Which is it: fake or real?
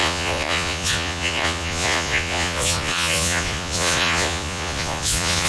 fake